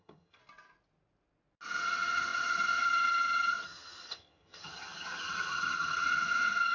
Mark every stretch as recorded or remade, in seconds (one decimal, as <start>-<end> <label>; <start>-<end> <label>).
0.0-0.4 remade; 0.4-1.8 recorded; 1.8-6.7 remade